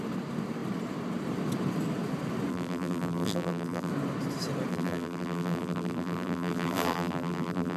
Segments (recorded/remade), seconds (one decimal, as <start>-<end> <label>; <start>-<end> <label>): 0.0-2.5 recorded; 2.5-3.9 remade; 3.9-4.7 recorded; 4.7-7.8 remade